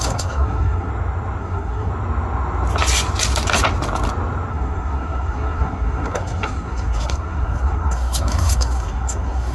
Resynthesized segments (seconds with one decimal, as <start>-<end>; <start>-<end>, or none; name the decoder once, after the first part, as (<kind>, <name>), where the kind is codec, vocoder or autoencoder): 0.0-0.9 (codec, SNAC); 1.4-1.9; 4.5-9.5